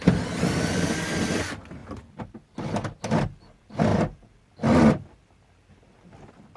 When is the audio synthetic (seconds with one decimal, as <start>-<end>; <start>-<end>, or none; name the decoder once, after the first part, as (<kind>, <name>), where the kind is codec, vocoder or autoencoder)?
none